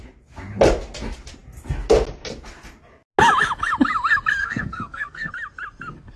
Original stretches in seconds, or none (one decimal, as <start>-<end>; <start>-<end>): 0.0-4.4; 5.3-6.2